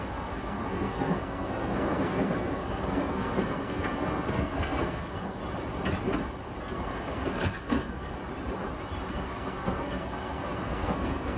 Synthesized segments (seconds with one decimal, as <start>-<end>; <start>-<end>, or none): 0.0-5.4; 6.6-8.2; 9.1-11.4